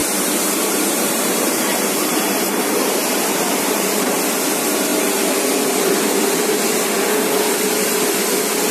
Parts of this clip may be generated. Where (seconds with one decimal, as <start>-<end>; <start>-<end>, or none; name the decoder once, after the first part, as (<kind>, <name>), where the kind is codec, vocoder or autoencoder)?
0.0-4.2 (vocoder, BigVGAN v2)